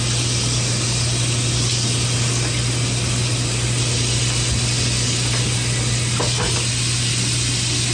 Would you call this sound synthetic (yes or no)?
no